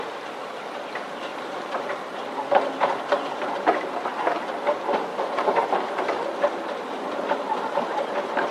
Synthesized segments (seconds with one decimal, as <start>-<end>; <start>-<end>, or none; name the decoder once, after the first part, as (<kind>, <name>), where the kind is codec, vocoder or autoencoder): 0.0-2.4 (vocoder, BigVGAN v2); 4.1-8.5